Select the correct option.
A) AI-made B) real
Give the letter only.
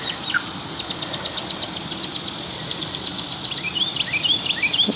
B